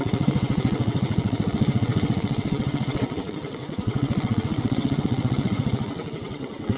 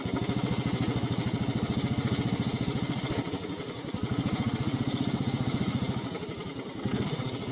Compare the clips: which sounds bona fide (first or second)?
second